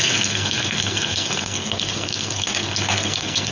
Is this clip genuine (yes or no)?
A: no